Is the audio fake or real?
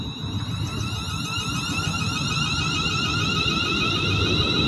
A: real